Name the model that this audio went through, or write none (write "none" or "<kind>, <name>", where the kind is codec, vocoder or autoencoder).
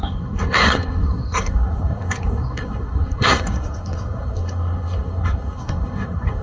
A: codec, SNAC